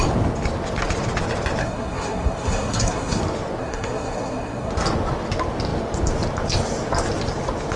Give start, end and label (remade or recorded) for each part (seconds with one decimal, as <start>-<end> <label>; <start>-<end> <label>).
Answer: 0.0-1.6 recorded; 1.6-3.2 remade; 3.2-3.6 recorded; 3.6-4.7 remade; 4.7-7.8 recorded